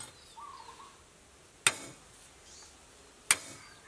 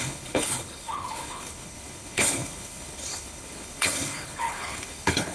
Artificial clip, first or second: second